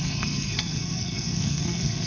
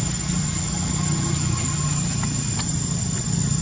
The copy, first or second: first